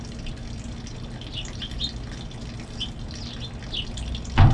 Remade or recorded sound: recorded